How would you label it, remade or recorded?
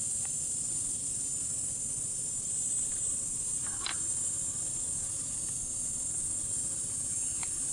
recorded